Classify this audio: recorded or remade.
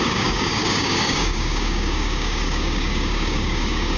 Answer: remade